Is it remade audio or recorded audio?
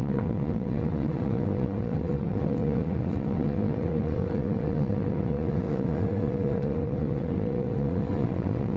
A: remade